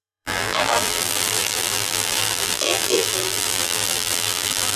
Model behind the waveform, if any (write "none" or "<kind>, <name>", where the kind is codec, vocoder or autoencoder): vocoder, BigVGAN v2